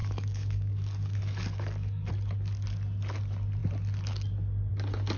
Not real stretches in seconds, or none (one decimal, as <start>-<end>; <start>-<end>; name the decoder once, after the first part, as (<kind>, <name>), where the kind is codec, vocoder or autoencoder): 0.0-2.1 (codec, DAC)